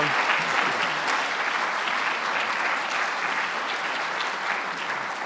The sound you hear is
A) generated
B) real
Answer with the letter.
B